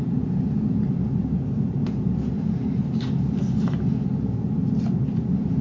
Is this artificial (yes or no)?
no